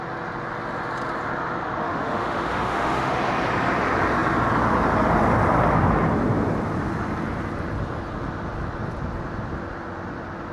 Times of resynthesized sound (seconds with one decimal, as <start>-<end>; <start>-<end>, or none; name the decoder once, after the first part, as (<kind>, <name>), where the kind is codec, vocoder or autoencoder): 1.8-3.2 (autoencoder, DAC-VAE)